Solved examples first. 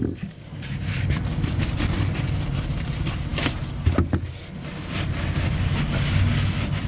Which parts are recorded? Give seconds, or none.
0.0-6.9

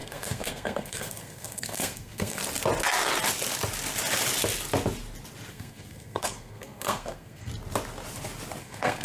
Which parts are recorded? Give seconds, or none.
2.4-5.5; 7.5-8.6